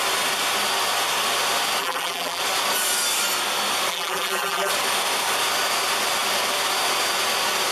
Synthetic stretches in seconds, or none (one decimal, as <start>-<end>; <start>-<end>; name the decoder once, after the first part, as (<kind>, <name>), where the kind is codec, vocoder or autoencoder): 1.8-2.4 (vocoder, BigVGAN v2); 3.9-4.7